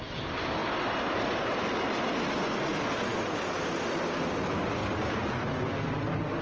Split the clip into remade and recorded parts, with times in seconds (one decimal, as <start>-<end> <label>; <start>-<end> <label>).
0.0-6.4 recorded